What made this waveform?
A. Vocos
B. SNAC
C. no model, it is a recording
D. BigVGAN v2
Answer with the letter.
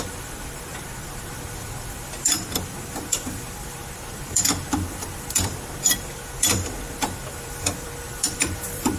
D